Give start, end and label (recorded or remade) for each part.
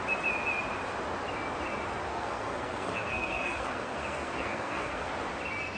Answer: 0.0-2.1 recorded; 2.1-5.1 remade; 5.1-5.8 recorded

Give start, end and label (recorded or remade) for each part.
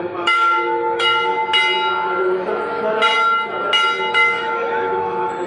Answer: 0.0-1.3 remade; 1.3-4.1 recorded; 4.1-5.5 remade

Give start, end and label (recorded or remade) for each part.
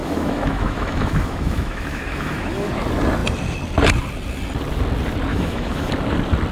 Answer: 0.0-2.7 remade; 2.7-5.3 recorded; 5.3-5.9 remade; 5.9-6.5 recorded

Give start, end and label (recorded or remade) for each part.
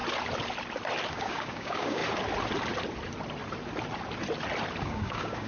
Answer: 0.0-1.1 recorded; 1.1-2.0 remade; 2.0-4.8 recorded; 4.8-5.5 remade